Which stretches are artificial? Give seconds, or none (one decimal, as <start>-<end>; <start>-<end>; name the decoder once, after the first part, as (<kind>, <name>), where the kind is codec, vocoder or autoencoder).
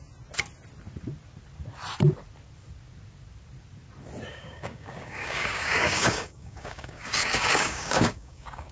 4.3-8.7 (codec, DAC)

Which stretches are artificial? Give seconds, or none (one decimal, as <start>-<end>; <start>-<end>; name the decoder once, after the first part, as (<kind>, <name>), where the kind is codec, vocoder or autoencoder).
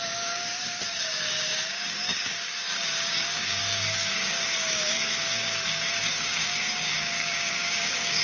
0.0-8.2 (codec, DAC)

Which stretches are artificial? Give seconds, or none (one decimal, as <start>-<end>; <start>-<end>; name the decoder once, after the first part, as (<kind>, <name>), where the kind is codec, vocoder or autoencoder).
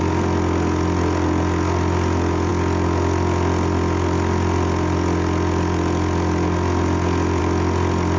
none